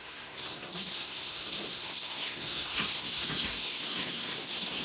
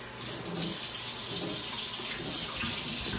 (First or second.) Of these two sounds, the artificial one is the first